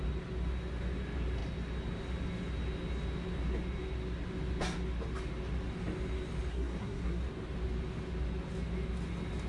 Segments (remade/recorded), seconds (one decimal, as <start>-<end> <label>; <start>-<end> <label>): 0.0-6.5 recorded; 6.5-7.2 remade; 7.2-9.5 recorded